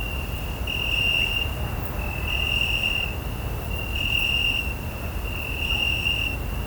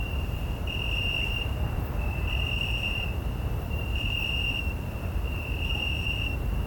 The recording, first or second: first